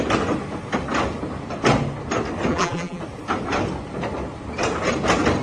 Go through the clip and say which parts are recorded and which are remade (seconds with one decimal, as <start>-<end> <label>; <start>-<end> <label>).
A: 0.0-2.5 recorded; 2.5-3.0 remade; 3.0-5.4 recorded